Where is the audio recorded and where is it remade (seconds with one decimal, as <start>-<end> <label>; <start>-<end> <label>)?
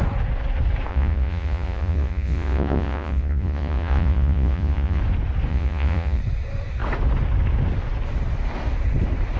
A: 0.0-0.9 recorded; 0.9-5.0 remade; 5.0-5.5 recorded; 5.5-6.2 remade; 6.2-9.4 recorded